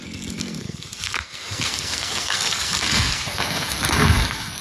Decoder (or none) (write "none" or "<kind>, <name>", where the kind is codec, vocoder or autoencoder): codec, SNAC